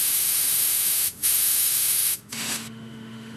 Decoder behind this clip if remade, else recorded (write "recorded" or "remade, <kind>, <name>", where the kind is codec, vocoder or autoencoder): remade, autoencoder, DAC-VAE